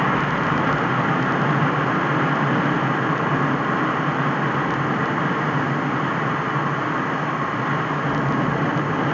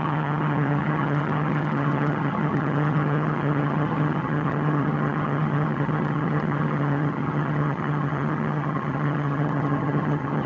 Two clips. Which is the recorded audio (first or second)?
first